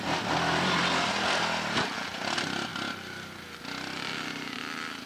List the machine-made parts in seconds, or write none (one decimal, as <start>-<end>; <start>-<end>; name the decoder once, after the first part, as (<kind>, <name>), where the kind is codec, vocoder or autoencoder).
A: none